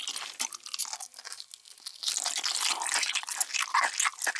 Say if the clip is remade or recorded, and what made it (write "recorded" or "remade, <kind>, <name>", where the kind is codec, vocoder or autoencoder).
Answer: recorded